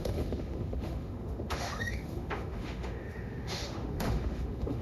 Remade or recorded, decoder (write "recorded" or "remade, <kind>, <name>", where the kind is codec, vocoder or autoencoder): remade, autoencoder, DAC-VAE